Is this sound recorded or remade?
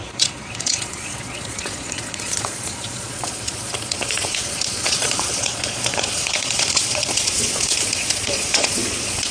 remade